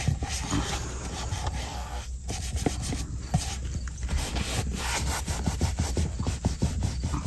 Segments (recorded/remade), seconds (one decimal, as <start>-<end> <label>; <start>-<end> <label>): 0.0-1.6 recorded; 1.6-2.1 remade; 2.1-7.3 recorded